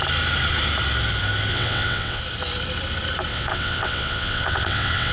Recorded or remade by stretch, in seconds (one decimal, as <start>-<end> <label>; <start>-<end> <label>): 0.0-1.5 recorded; 1.5-2.2 remade; 2.2-3.3 recorded; 3.3-5.1 remade